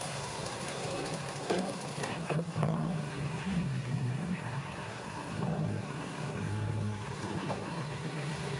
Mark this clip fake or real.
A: fake